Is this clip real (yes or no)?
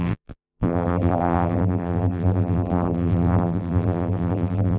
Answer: no